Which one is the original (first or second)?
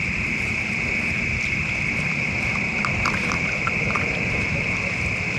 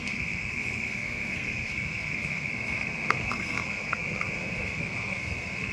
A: first